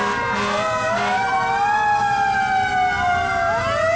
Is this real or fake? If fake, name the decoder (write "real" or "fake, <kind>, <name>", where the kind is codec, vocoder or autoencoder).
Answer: real